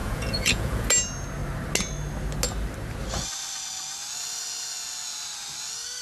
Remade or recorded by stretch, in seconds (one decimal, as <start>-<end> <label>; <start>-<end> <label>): 0.0-0.9 remade; 0.9-6.0 recorded